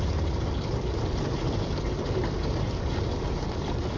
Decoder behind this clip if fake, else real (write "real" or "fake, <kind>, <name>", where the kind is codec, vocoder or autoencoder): real